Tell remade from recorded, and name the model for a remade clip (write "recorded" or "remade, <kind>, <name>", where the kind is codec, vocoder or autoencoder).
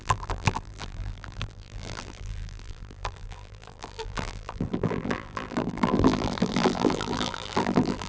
remade, vocoder, BigVGAN v2